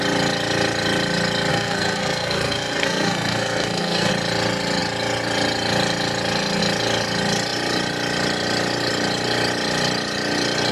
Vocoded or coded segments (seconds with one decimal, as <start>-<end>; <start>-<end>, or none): 1.5-4.1